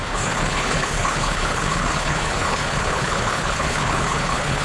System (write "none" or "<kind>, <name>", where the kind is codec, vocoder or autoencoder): codec, HILCodec